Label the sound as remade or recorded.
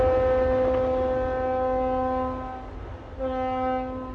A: recorded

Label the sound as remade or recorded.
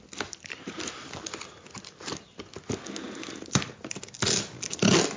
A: recorded